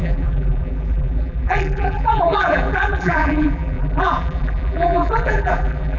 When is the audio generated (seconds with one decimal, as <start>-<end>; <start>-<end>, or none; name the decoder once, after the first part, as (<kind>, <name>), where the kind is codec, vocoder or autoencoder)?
0.0-6.0 (vocoder, BigVGAN v2)